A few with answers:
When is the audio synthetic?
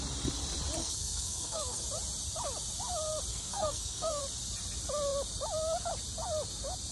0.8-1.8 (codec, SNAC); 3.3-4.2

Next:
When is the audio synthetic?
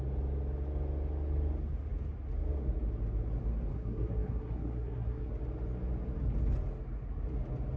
3.7-5.3 (codec, SNAC)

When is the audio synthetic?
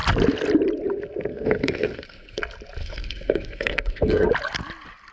1.3-2.4 (codec, SNAC); 2.8-4.3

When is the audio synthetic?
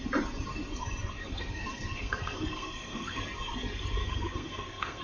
1.2-3.2 (codec, SNAC); 4.0-5.0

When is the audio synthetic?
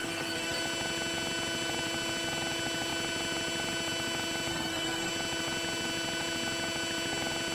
0.0-0.6 (codec, SNAC); 4.5-5.1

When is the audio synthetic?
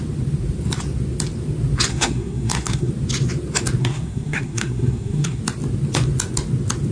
1.9-2.9 (codec, SNAC); 3.8-5.4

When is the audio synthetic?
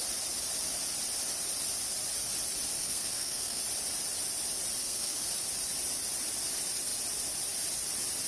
2.8-3.6 (codec, SNAC); 4.8-5.3